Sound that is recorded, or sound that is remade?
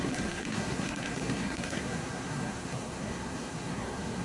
remade